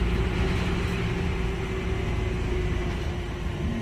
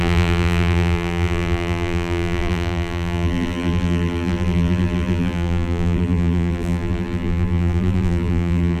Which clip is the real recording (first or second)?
first